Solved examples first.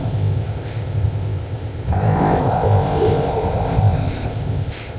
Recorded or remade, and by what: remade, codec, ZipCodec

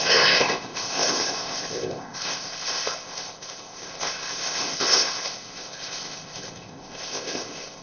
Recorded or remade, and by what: remade, codec, ZipCodec